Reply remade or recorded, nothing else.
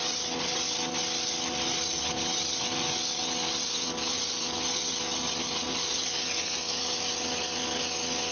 recorded